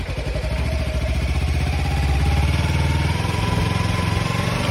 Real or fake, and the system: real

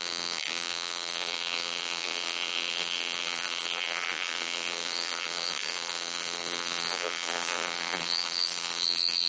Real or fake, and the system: fake, vocoder, BigVGAN v2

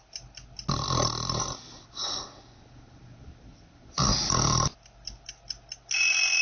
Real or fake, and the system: real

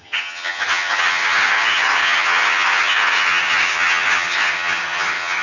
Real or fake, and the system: fake, vocoder, HiFi-GAN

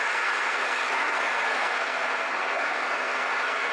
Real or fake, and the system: fake, codec, SNAC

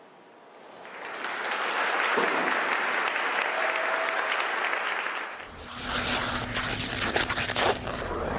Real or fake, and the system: real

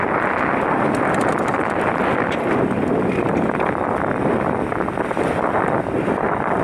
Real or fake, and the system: real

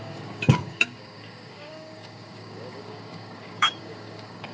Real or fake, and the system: fake, codec, DAC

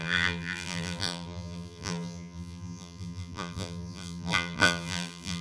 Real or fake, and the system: fake, vocoder, BigVGAN v2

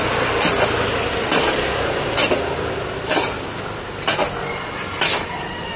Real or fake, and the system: real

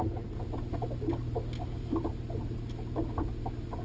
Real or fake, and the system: real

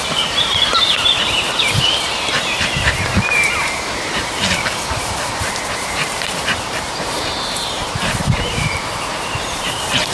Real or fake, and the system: fake, vocoder, BigVGAN v2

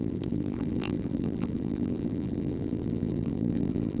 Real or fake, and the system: fake, vocoder, BigVGAN v2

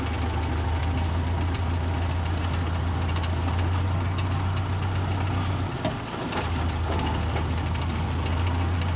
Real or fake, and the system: real